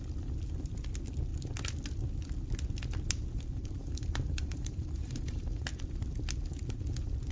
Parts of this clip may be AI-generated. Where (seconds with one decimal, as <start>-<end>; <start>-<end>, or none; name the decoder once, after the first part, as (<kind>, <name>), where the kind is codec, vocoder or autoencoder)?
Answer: 3.6-5.6 (vocoder, BigVGAN v2)